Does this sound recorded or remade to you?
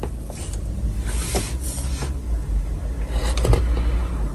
recorded